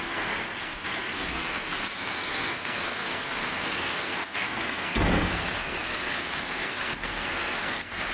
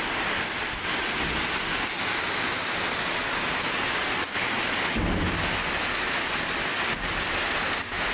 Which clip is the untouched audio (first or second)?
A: second